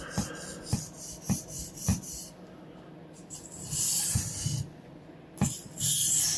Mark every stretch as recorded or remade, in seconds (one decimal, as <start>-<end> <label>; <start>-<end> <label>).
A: 0.0-6.4 remade